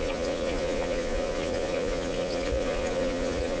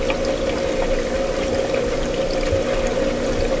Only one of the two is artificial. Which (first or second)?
first